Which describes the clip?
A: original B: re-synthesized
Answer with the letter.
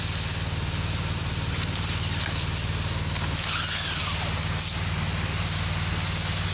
A